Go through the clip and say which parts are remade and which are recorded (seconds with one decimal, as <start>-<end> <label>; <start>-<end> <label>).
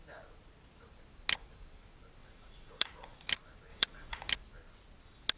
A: 0.0-2.2 recorded; 2.2-3.3 remade; 3.3-3.7 recorded; 3.7-4.3 remade; 4.3-5.4 recorded